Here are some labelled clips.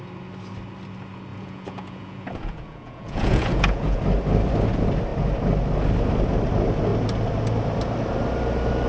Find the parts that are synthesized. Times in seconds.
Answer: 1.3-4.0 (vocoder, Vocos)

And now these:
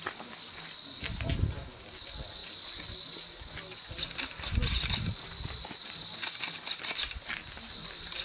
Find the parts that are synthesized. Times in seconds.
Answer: none

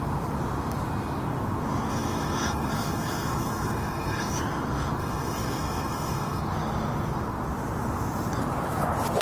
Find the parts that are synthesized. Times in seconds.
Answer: 1.9-4.4 (autoencoder, DAC-VAE); 5.0-6.4

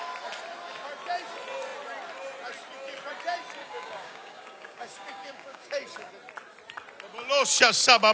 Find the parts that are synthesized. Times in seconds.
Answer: 3.6-6.1 (codec, DAC)

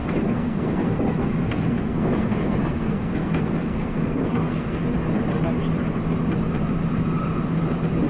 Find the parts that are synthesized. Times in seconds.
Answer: 0.0-4.8 (codec, SNAC)

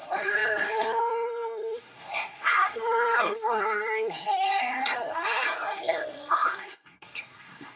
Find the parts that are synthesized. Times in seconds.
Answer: 0.0-7.8 (codec, SNAC)

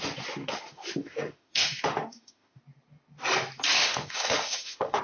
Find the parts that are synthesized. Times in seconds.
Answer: 0.4-2.6 (autoencoder, DAC-VAE); 3.7-5.0

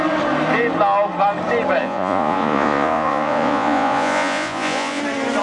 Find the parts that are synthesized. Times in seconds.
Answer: 1.8-5.0 (vocoder, Vocos)